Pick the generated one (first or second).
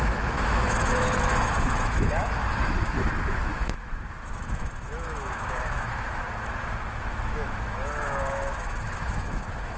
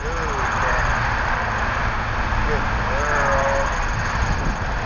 first